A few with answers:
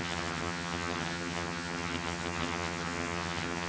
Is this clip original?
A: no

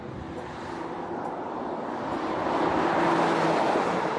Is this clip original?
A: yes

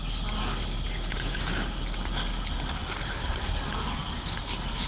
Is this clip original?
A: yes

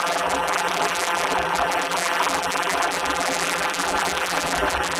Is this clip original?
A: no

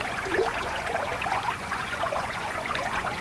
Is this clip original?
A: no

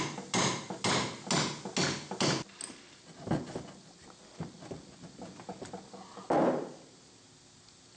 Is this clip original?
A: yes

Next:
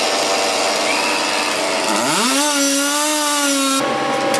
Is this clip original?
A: yes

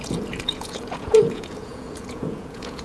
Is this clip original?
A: no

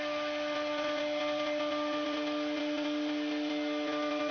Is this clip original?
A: yes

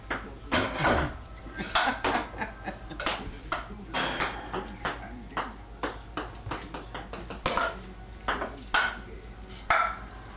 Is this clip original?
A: yes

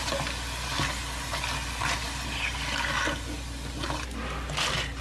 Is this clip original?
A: yes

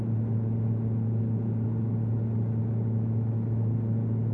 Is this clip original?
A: yes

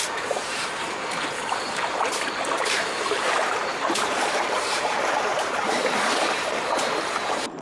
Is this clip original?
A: no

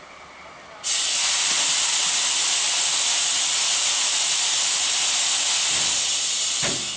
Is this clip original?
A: yes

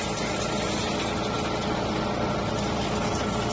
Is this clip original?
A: yes